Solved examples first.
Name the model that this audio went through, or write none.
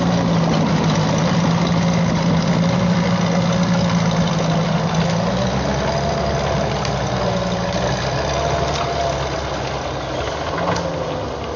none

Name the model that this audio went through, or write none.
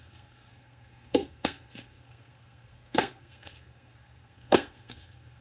codec, SNAC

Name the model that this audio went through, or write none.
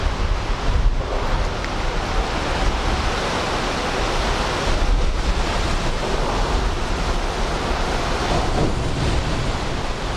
none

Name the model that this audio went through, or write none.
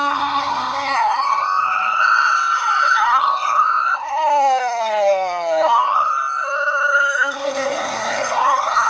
codec, SNAC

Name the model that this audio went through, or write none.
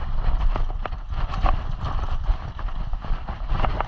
none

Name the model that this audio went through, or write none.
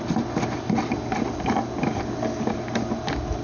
none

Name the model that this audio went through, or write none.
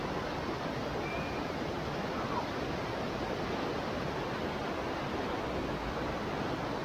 none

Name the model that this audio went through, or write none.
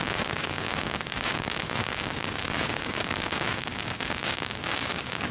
codec, DAC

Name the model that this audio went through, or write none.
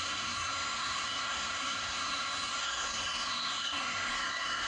codec, SNAC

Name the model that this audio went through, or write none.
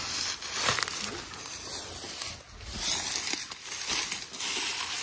none